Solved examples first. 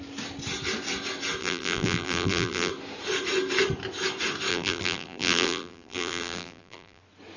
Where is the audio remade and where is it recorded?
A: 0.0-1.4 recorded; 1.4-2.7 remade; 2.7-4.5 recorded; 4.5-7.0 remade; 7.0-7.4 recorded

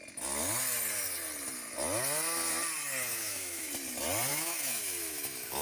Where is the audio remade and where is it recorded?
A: 0.0-3.1 recorded; 3.1-3.7 remade; 3.7-4.3 recorded; 4.3-5.6 remade